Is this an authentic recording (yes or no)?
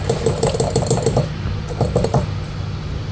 yes